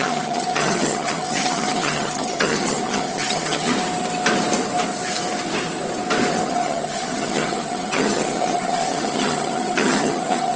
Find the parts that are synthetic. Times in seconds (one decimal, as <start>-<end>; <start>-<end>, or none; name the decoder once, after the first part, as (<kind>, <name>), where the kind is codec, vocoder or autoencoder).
0.0-3.7 (vocoder, HiFi-GAN); 6.3-10.6